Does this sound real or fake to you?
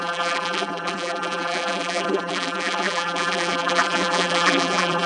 fake